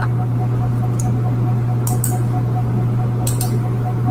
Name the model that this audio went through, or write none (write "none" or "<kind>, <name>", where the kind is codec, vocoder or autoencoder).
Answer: none